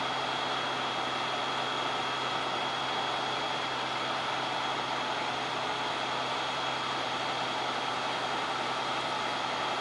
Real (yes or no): yes